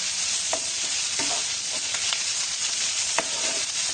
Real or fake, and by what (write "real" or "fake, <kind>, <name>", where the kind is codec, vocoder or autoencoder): fake, vocoder, Vocos